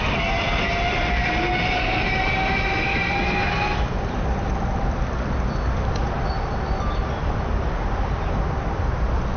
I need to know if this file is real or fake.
fake